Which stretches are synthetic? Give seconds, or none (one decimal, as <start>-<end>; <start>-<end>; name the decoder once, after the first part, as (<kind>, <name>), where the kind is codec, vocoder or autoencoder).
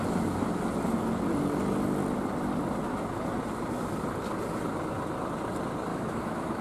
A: 5.9-6.6 (autoencoder, DAC-VAE)